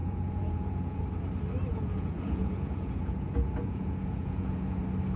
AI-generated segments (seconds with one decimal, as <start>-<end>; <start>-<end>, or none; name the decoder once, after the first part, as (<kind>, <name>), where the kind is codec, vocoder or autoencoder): 0.0-1.0 (vocoder, Vocos); 1.7-4.8